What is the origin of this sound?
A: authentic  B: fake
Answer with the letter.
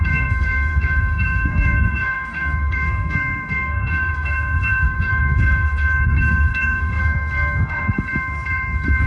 B